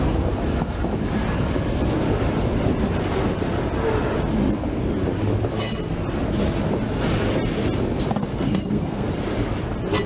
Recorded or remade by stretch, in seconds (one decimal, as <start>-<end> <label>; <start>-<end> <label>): 0.0-8.3 recorded; 8.3-9.1 remade; 9.1-10.1 recorded